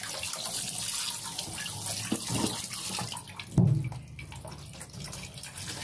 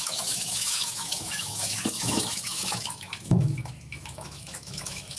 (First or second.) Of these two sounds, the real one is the first